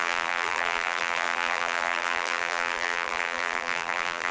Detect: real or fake fake